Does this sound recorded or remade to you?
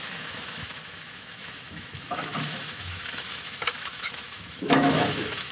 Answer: remade